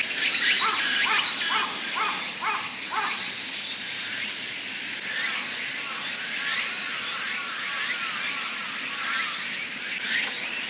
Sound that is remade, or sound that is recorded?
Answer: recorded